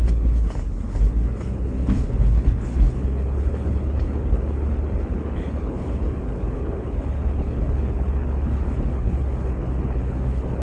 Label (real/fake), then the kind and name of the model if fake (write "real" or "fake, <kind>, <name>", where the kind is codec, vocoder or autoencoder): fake, codec, HILCodec